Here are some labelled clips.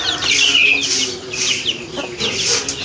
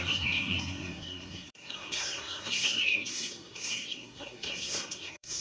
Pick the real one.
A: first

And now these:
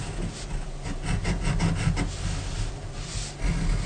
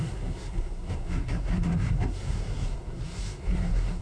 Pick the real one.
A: first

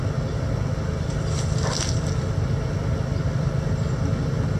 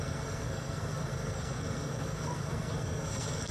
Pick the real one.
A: first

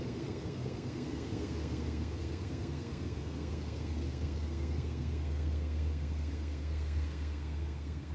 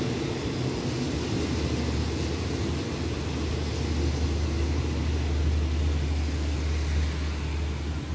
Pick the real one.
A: second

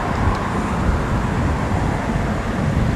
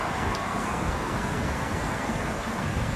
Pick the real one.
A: first